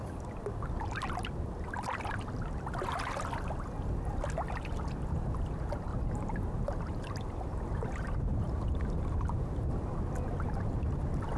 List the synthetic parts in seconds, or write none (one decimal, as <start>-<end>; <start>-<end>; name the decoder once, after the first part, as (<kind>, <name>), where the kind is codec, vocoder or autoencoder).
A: 5.9-10.0 (vocoder, BigVGAN v2)